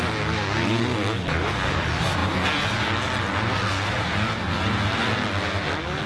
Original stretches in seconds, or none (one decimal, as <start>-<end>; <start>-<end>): 0.0-6.1